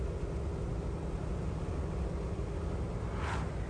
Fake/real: real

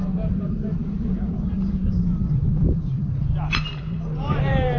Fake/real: fake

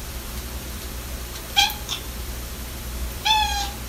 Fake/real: fake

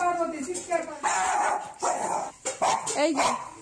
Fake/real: real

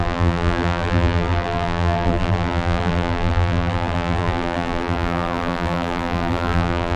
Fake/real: fake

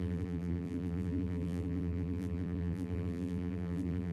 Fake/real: fake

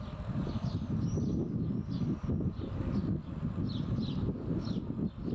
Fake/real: real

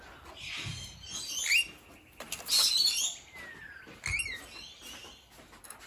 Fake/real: real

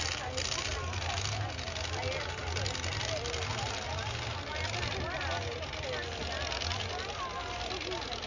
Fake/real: real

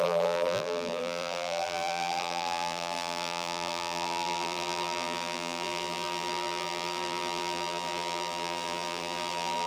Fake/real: fake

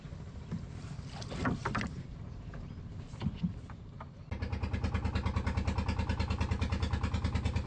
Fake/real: real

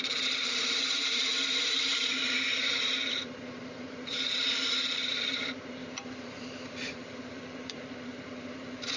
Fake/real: fake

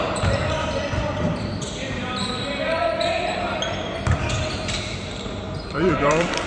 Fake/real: fake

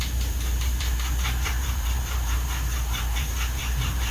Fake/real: fake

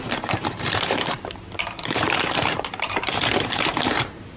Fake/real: fake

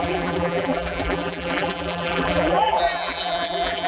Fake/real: fake